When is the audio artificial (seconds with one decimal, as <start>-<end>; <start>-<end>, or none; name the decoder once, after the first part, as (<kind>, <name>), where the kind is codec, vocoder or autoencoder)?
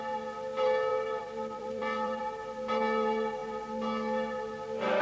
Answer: 0.9-2.2 (vocoder, BigVGAN v2)